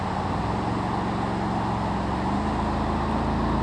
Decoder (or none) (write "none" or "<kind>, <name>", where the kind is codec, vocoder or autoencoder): none